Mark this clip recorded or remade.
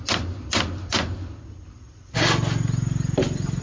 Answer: recorded